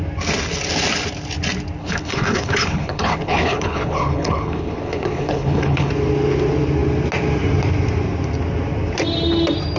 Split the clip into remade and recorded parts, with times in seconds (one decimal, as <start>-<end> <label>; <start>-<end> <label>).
0.0-1.8 recorded; 1.8-5.9 remade; 5.9-9.8 recorded